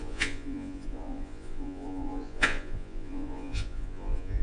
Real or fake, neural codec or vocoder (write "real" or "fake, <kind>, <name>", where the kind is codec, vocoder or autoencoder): fake, vocoder, Vocos